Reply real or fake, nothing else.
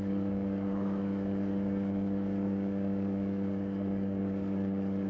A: fake